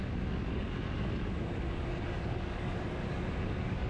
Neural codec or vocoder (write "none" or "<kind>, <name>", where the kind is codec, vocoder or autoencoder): codec, DAC